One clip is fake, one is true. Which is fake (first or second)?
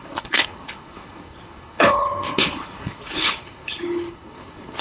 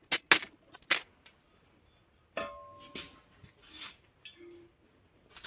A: first